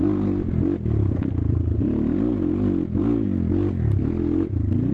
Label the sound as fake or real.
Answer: real